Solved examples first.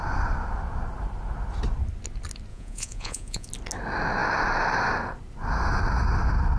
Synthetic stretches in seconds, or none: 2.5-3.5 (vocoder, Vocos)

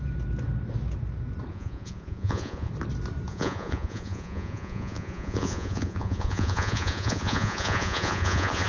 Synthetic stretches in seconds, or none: 1.5-2.7 (vocoder, Vocos); 3.3-8.7

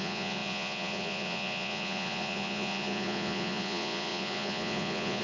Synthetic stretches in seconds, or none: 0.0-5.2 (vocoder, Vocos)

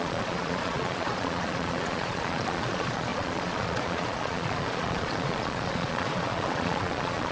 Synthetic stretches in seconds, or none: 0.0-7.3 (vocoder, Vocos)

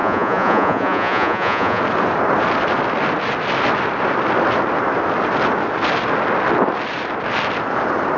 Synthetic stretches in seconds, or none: 0.0-1.8 (vocoder, Vocos)

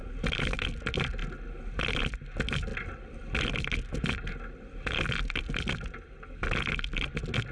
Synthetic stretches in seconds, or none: none

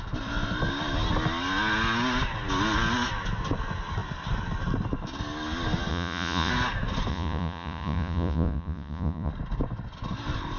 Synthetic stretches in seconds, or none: 5.9-6.5 (vocoder, Vocos); 7.1-9.3

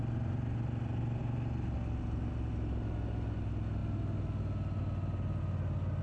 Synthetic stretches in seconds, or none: none